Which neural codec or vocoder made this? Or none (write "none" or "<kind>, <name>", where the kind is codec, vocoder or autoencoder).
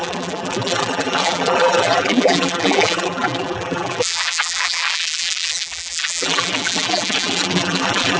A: vocoder, BigVGAN v2